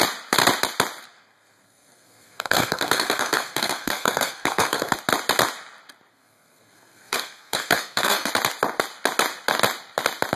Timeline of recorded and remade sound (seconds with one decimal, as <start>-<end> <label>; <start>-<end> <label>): 0.0-1.1 recorded; 1.1-4.9 remade; 4.9-6.1 recorded; 6.1-8.3 remade; 8.3-10.4 recorded